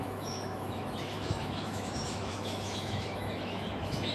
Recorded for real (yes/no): no